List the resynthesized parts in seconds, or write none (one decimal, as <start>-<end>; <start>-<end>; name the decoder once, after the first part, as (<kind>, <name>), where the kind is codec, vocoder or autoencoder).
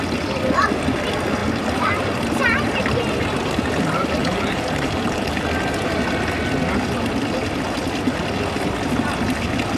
4.2-5.4 (vocoder, BigVGAN v2)